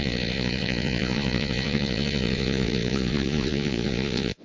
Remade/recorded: remade